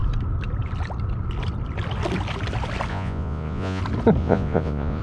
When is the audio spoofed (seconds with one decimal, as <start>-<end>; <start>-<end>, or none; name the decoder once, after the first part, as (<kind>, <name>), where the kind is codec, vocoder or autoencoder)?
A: 2.9-3.8 (vocoder, Vocos); 4.2-5.0